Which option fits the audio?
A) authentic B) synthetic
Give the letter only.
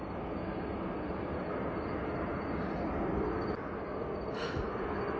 A